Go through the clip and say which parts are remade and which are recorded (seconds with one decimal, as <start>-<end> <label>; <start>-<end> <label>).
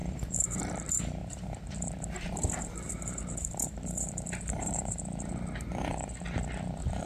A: 0.0-0.6 remade; 0.6-1.2 recorded; 1.2-5.3 remade; 5.3-7.1 recorded